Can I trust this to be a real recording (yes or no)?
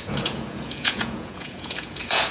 no